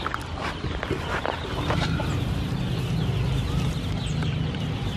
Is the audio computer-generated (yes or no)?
yes